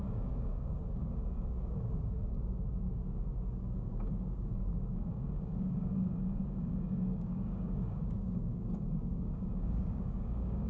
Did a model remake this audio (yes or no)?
yes